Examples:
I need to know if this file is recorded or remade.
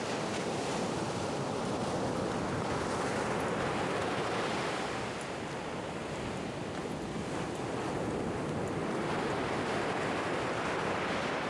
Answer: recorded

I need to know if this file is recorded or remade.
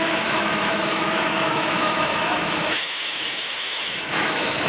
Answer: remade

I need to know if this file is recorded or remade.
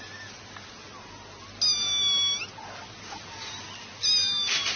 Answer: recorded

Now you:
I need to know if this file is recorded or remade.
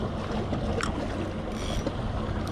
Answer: recorded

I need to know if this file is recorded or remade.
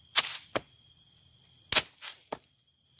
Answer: recorded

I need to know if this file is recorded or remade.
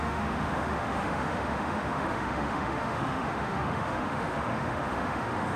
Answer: remade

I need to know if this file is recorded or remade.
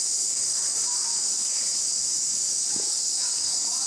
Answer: remade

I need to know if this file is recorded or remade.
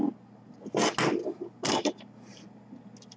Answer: recorded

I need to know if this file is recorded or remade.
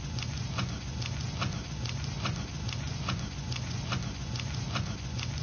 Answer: remade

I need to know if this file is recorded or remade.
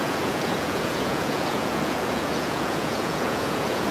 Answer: remade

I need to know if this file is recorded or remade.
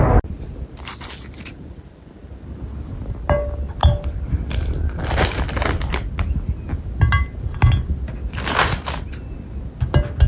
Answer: recorded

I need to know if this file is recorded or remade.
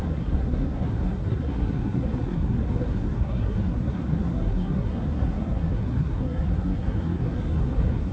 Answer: remade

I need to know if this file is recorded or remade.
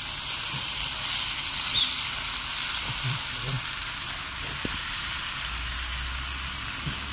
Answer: recorded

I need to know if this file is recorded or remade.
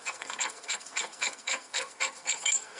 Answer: remade